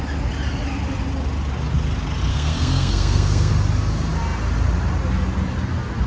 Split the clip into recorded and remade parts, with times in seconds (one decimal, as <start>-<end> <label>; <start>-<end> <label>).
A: 0.0-2.3 recorded; 2.3-3.5 remade; 3.5-6.1 recorded